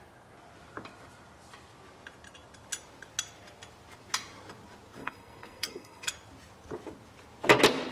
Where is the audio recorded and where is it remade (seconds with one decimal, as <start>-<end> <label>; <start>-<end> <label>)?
0.0-5.0 recorded; 5.0-6.1 remade; 6.1-7.9 recorded